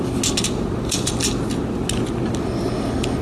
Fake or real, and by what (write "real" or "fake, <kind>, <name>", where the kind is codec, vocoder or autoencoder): real